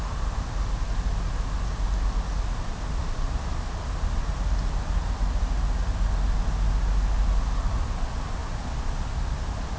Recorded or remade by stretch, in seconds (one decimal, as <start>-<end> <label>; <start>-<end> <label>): 0.0-9.8 recorded

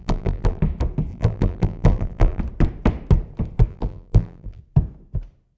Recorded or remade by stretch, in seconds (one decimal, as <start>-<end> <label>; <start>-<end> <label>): 0.0-0.6 remade; 0.6-1.1 recorded; 1.1-2.4 remade; 2.4-3.7 recorded; 3.7-4.6 remade; 4.6-5.6 recorded

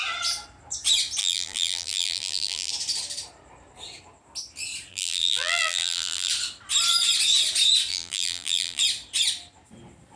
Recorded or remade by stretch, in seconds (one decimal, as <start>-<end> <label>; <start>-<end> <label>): 0.0-1.2 recorded; 1.2-2.7 remade; 2.7-4.9 recorded; 4.9-6.3 remade; 6.3-7.9 recorded; 7.9-8.8 remade; 8.8-10.2 recorded

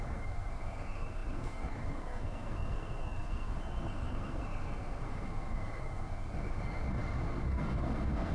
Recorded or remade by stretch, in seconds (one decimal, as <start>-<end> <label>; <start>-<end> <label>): 0.0-8.3 remade

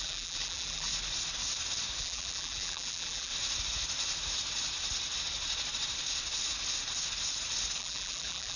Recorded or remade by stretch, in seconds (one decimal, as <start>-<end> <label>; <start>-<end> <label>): 0.0-0.9 remade; 0.9-2.0 recorded; 2.0-3.3 remade; 3.3-7.8 recorded; 7.8-8.6 remade

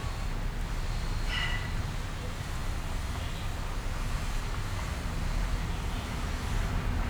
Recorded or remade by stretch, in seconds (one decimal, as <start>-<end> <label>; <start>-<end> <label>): 0.0-7.1 recorded

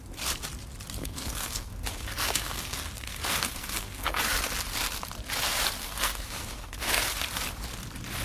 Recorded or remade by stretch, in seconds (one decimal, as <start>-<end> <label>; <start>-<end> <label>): 0.0-1.0 recorded; 1.0-4.2 remade; 4.2-5.8 recorded; 5.8-7.2 remade; 7.2-8.2 recorded